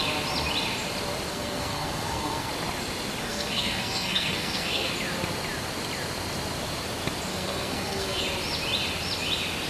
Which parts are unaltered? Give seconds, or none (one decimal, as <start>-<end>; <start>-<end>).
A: 0.0-1.3; 2.5-3.2; 4.9-7.3; 8.2-9.7